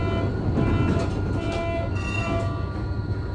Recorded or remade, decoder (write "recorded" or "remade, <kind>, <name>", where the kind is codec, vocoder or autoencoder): recorded